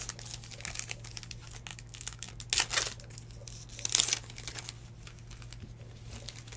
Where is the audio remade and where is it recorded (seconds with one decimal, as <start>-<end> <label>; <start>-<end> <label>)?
0.0-1.7 recorded; 1.7-2.3 remade; 2.3-6.6 recorded